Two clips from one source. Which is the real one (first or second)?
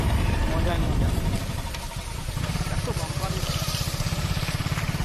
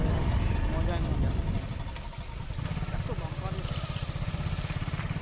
second